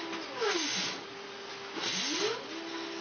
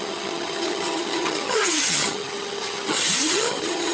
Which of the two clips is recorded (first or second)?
first